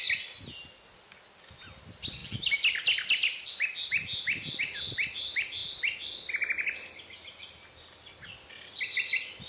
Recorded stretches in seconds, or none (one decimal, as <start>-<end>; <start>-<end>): 0.0-9.5